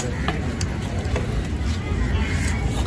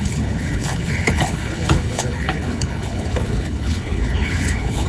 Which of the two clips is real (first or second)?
first